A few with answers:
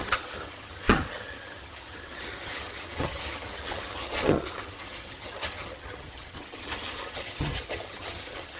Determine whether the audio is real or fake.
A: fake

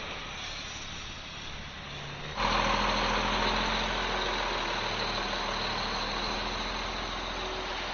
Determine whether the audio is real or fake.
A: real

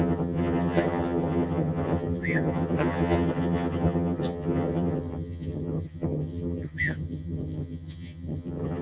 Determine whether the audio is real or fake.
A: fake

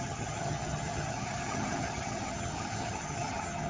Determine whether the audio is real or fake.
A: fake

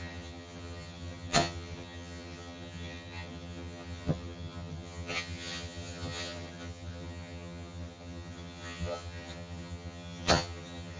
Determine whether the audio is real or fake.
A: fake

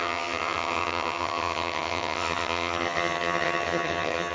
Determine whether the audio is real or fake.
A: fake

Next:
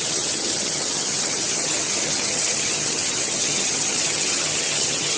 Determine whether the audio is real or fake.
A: fake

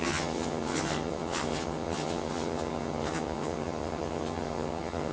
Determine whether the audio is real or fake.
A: fake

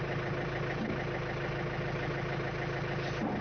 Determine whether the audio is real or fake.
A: real